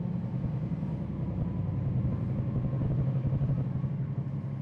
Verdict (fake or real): real